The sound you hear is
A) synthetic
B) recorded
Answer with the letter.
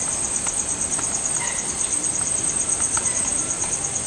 B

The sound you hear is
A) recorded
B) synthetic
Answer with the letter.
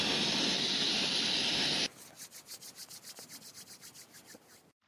A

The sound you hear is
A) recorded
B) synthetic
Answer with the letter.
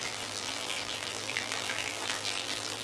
B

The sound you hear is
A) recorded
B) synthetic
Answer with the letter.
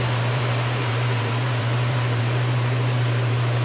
B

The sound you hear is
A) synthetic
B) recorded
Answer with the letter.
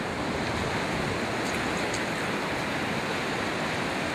B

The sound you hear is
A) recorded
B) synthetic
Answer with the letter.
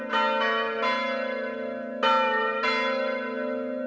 A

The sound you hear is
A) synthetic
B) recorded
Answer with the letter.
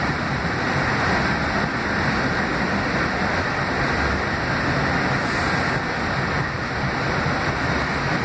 B